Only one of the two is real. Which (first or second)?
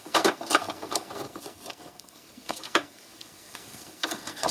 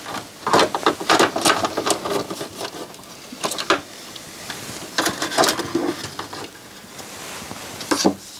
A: second